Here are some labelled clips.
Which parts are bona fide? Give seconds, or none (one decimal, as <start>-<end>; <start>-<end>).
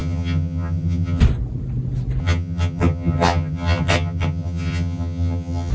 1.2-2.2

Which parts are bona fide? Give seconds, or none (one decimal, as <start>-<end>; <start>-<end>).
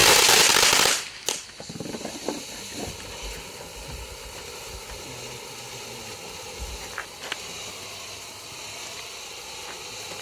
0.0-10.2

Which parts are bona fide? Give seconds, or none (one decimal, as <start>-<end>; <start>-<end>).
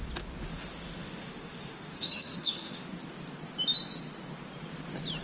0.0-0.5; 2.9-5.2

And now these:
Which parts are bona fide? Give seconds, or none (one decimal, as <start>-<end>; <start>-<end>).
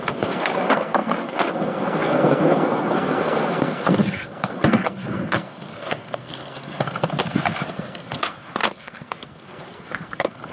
none